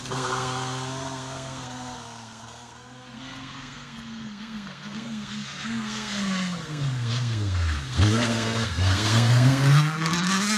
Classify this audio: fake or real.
fake